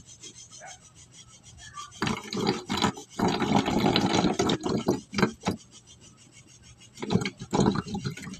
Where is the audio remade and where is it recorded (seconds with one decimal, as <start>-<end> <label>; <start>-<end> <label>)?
0.0-7.7 recorded; 7.7-8.4 remade